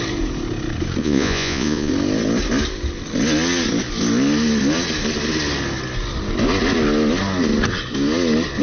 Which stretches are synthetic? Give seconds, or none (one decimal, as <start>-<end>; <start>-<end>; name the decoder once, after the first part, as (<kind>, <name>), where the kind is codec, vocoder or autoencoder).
1.0-1.9 (vocoder, Vocos)